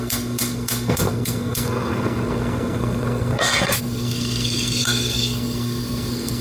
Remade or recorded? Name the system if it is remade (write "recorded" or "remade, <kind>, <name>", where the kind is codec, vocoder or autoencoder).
remade, codec, SNAC